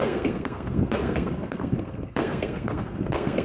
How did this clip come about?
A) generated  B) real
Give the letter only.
A